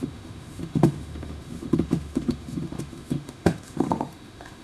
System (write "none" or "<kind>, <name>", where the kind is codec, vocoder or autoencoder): autoencoder, DAC-VAE